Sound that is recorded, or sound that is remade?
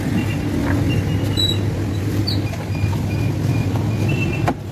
recorded